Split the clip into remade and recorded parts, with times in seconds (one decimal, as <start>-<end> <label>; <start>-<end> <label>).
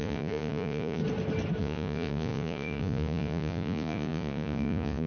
0.0-1.0 remade; 1.0-1.6 recorded; 1.6-5.1 remade